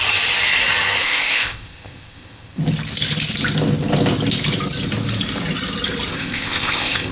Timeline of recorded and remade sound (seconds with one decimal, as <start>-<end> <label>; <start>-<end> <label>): 0.0-1.0 recorded; 1.0-2.6 remade; 2.6-6.1 recorded; 6.1-7.1 remade